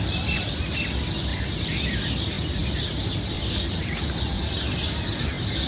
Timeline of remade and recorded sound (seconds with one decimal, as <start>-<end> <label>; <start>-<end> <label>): 0.0-2.6 recorded; 2.6-4.5 remade; 4.5-5.7 recorded